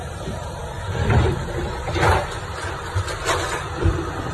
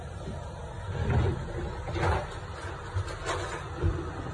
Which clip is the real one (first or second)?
second